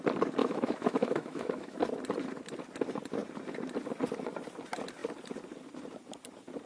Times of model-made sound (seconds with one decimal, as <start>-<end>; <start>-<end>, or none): 0.4-1.8

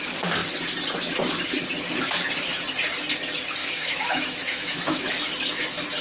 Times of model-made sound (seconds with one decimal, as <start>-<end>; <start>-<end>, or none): 3.6-5.6

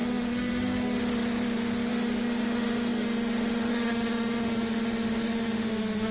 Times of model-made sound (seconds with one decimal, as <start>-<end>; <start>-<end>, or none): 0.0-1.0; 1.9-6.1

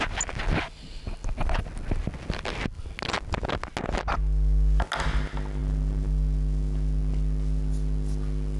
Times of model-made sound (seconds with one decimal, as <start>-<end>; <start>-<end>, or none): none

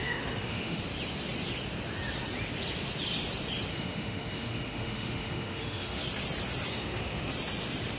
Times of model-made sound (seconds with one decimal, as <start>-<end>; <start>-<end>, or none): 0.0-0.8; 3.7-6.0; 6.7-7.3

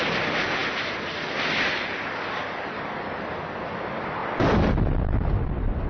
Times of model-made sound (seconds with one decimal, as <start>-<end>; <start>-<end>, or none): none

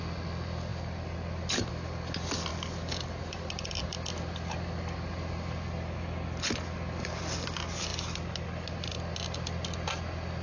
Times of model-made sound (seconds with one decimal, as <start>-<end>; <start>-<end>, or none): none

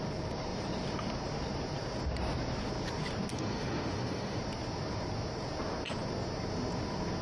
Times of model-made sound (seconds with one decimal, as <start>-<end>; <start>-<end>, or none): 3.3-4.4